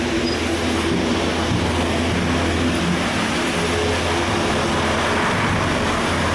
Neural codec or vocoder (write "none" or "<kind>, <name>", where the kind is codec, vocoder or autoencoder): none